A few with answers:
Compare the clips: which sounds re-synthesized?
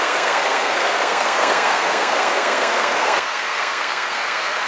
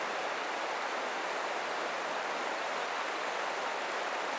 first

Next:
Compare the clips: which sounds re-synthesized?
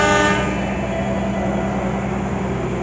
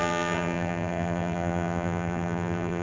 second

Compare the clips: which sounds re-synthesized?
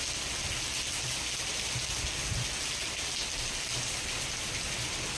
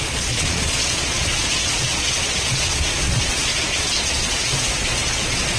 second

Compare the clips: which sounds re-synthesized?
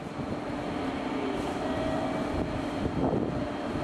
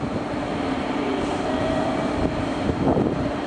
second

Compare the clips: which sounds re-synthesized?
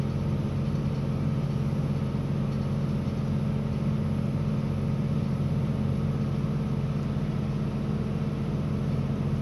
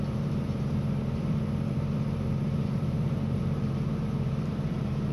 second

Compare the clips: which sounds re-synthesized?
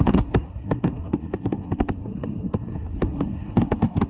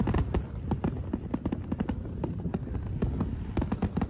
first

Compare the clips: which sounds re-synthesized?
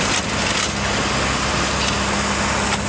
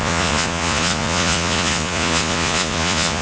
second